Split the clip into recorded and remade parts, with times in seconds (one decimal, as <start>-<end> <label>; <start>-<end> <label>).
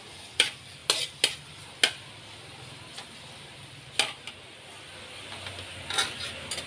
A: 0.0-6.7 recorded